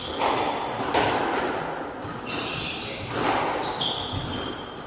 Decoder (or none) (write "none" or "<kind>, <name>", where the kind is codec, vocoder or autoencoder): none